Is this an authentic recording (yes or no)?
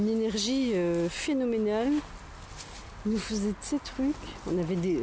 yes